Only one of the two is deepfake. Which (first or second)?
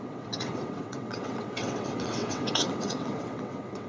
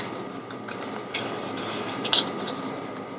first